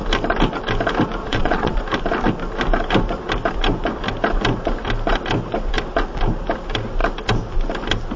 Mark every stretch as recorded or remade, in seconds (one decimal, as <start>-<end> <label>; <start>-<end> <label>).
0.0-1.2 recorded; 1.2-1.8 remade; 1.8-8.2 recorded